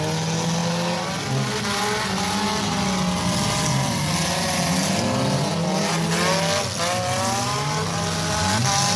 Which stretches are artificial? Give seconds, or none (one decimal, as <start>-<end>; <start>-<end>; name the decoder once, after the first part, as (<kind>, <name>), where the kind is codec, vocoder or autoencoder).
none